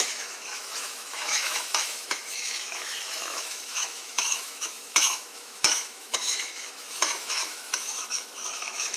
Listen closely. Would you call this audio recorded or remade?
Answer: remade